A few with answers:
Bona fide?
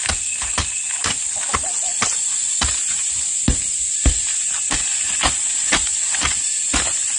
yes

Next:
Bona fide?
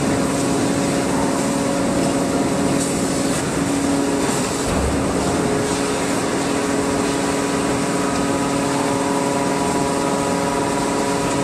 yes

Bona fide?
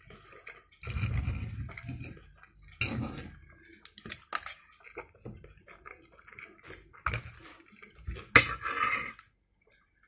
yes